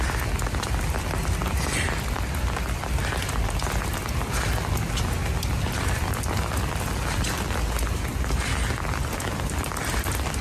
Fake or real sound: real